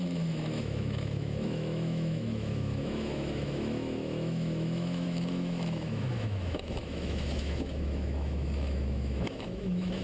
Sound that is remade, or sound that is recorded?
remade